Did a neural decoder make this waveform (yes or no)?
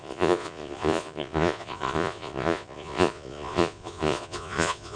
yes